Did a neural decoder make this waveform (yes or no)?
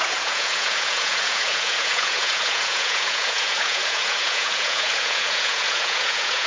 yes